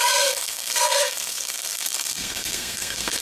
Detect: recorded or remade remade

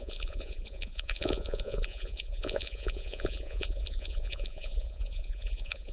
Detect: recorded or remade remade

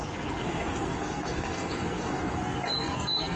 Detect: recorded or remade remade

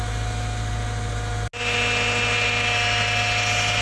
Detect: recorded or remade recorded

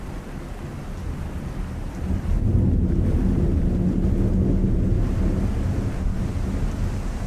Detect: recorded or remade recorded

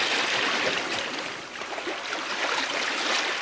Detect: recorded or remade recorded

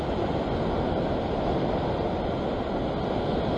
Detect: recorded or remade recorded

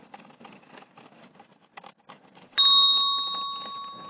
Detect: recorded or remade recorded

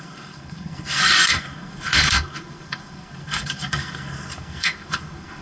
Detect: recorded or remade remade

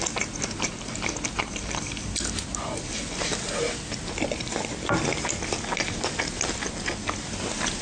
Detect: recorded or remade recorded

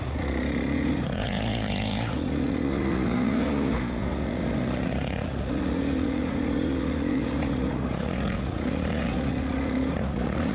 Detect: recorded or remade remade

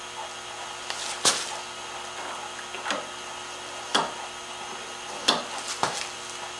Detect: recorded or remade recorded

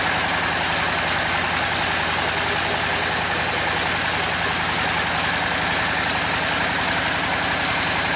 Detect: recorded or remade recorded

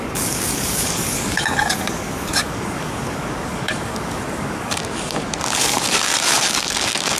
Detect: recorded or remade remade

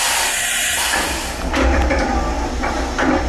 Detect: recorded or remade recorded